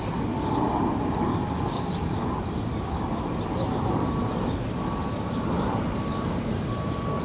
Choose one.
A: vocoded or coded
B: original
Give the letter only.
B